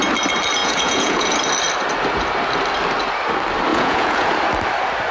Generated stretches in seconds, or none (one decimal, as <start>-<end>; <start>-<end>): 0.6-1.4; 3.7-4.3